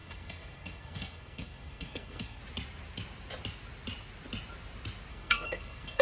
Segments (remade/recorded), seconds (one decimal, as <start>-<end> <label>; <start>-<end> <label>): 0.0-2.4 remade; 2.4-5.1 recorded; 5.1-6.0 remade